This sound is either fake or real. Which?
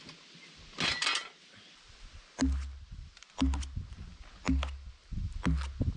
real